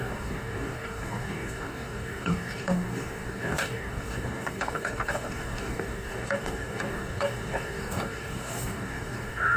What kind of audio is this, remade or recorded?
remade